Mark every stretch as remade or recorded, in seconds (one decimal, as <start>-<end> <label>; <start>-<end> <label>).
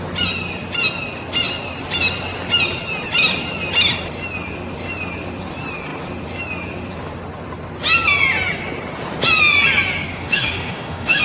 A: 0.0-10.1 recorded; 10.1-11.2 remade